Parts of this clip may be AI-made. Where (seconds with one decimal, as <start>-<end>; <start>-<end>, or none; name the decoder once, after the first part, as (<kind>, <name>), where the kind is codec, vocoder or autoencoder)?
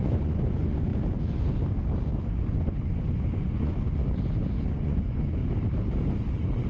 0.0-0.9 (vocoder, Vocos); 2.1-4.0; 4.7-5.4